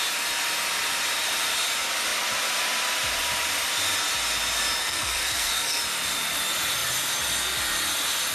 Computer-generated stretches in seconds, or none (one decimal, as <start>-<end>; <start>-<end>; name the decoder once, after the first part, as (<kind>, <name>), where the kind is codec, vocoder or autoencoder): 4.8-5.8 (codec, SNAC)